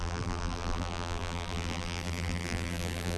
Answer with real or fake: fake